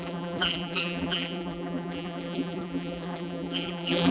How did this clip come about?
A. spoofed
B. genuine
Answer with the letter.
A